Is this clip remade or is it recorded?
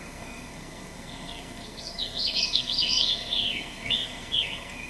remade